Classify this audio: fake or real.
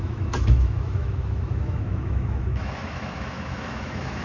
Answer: fake